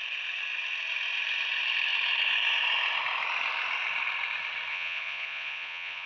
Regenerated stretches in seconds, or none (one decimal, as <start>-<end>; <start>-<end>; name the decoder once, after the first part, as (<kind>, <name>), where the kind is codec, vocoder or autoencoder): 4.7-6.1 (vocoder, Vocos)